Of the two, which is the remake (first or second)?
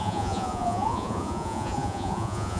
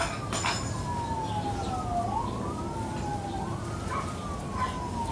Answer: first